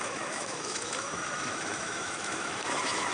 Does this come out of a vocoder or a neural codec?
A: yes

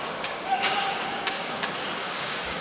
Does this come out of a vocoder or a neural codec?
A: yes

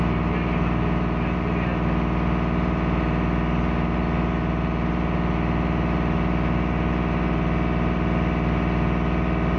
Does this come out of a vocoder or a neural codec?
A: no